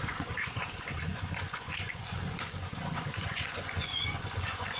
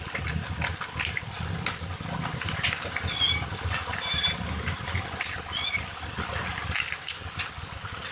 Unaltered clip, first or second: second